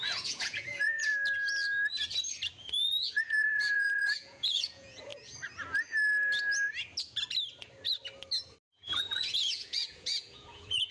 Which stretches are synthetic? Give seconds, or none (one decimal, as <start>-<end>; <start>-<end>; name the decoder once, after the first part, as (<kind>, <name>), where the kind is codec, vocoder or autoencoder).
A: 0.0-1.1 (vocoder, Vocos); 2.6-5.1; 8.6-10.9